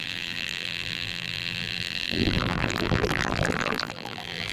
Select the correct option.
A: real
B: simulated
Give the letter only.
B